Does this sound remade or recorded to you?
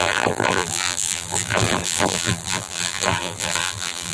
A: remade